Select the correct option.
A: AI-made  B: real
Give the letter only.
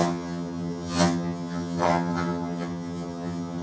A